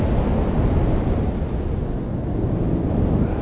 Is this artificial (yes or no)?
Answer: no